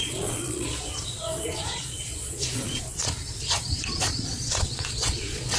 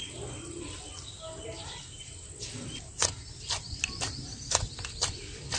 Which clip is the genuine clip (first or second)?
second